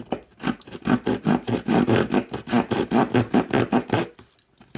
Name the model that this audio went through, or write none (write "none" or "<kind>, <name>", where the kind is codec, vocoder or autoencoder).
none